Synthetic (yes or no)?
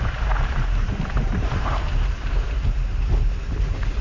yes